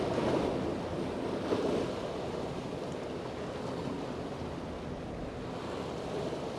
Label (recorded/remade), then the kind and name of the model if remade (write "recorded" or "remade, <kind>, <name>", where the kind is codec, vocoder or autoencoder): recorded